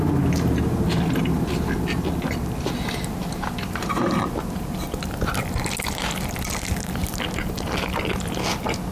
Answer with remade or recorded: recorded